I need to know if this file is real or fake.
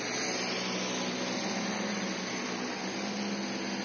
real